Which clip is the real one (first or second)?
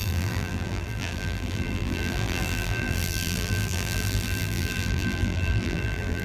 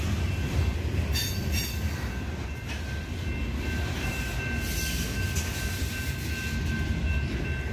second